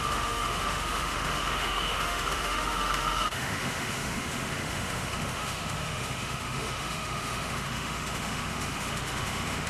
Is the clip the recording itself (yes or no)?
no